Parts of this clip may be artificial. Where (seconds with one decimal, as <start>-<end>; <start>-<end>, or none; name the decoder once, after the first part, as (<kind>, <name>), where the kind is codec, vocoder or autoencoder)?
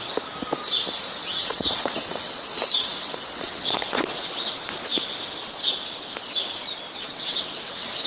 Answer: 1.4-4.3 (vocoder, WaveNeXt); 7.0-8.1